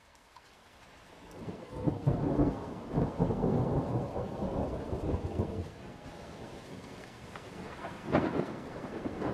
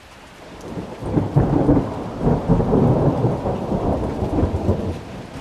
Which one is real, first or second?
second